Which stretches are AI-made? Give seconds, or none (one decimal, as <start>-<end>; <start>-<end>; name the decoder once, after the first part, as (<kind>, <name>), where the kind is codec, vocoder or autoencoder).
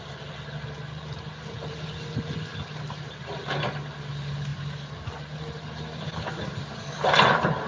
none